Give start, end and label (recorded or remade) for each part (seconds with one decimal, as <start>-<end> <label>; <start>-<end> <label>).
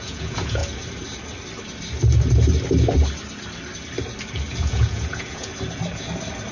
0.0-0.6 remade; 0.6-4.5 recorded; 4.5-5.5 remade; 5.5-6.5 recorded